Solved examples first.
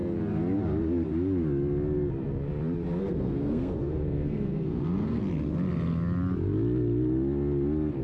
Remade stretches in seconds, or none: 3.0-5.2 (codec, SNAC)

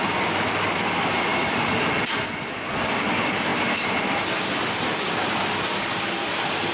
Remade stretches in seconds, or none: 0.0-6.7 (vocoder, BigVGAN v2)

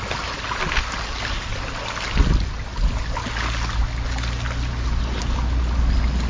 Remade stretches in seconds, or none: none

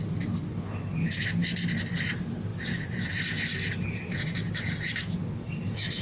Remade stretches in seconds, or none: 2.5-5.1 (vocoder, BigVGAN v2)

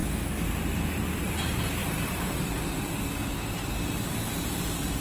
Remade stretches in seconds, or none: none

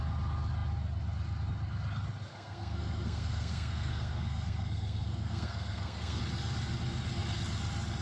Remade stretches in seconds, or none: 2.3-6.2 (codec, SNAC)

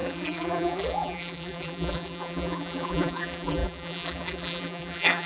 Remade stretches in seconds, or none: 0.0-5.3 (vocoder, BigVGAN v2)